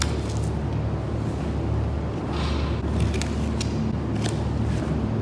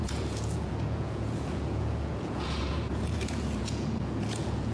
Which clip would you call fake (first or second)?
second